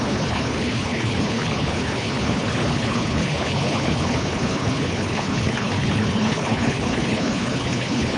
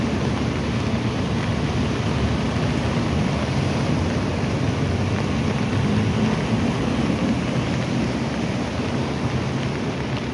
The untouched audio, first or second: second